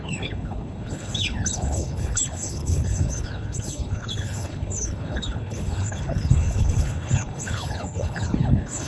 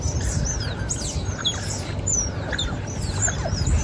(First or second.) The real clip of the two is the second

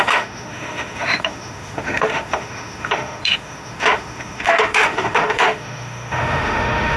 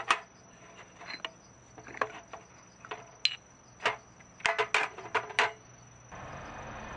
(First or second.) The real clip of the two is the second